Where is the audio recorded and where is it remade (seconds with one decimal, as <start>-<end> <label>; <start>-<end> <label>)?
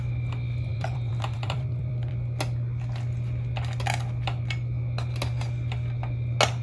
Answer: 0.0-0.7 recorded; 0.7-2.1 remade; 2.1-6.6 recorded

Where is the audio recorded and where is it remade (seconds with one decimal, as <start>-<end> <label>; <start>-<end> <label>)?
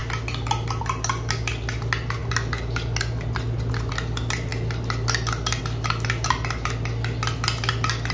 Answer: 0.0-8.1 recorded